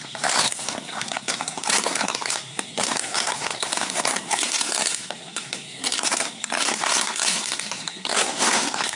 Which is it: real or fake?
fake